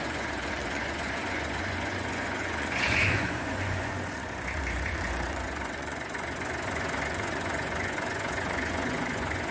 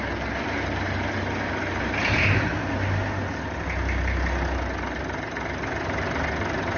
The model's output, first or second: first